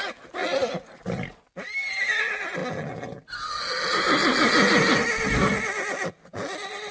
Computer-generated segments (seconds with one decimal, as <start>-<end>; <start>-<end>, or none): none